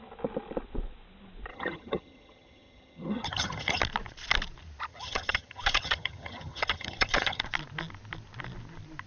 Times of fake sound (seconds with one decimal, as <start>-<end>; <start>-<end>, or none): 1.5-3.8; 4.9-7.4